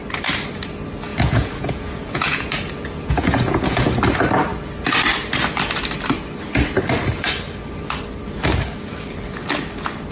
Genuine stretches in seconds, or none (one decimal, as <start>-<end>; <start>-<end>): 0.0-1.1; 4.0-10.1